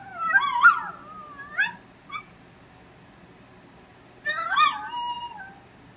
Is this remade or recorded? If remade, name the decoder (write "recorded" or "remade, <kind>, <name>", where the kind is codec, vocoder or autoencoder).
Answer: recorded